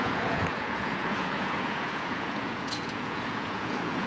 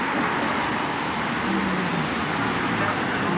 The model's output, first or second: first